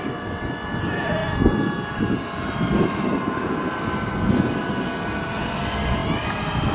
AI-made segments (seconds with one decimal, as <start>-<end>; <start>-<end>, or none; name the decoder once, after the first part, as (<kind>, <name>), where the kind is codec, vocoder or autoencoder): none